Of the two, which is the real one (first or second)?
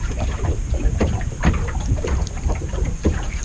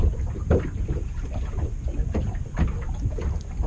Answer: second